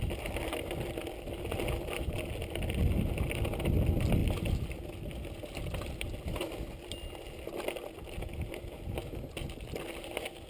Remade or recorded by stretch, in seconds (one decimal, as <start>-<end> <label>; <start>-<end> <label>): 0.0-4.2 recorded; 4.2-6.4 remade; 6.4-10.5 recorded